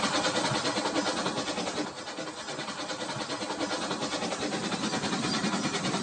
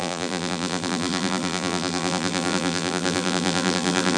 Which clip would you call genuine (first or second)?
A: first